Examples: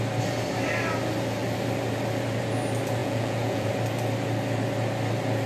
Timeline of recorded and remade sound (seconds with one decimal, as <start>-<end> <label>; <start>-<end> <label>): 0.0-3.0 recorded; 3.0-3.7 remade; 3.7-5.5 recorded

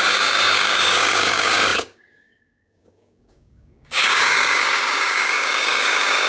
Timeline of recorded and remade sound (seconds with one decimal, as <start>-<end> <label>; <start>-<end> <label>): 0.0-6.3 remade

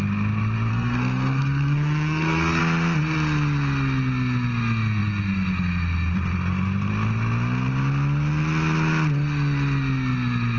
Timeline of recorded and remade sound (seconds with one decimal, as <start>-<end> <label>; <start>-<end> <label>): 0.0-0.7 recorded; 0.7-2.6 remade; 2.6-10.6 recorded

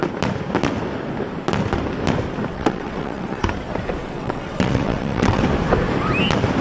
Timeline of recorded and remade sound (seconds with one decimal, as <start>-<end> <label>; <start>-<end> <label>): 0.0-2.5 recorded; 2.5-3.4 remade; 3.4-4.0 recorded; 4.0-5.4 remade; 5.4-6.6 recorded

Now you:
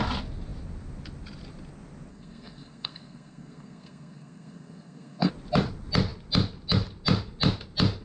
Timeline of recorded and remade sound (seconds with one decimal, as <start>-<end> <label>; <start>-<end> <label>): 0.0-2.1 recorded; 2.1-5.3 remade; 5.3-8.0 recorded

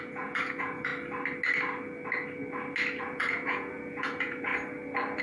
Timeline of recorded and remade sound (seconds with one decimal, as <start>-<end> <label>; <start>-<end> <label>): 0.0-0.9 remade; 0.9-3.0 recorded; 3.0-4.5 remade; 4.5-5.2 recorded

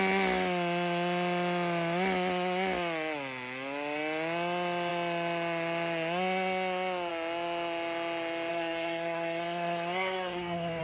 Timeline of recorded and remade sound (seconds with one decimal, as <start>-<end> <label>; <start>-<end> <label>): 0.0-8.5 recorded; 8.5-10.8 remade